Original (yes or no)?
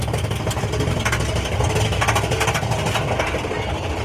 yes